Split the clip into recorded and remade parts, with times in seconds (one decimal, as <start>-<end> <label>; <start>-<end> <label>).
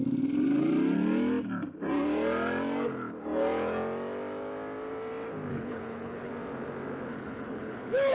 0.0-5.5 recorded; 5.5-6.3 remade; 6.3-7.1 recorded; 7.1-8.1 remade